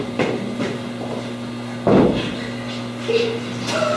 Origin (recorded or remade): recorded